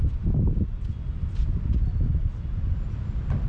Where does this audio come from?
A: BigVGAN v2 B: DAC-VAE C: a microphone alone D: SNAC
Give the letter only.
C